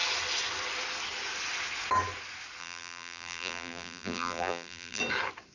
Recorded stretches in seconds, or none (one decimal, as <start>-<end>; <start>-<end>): 0.0-2.6; 5.0-5.5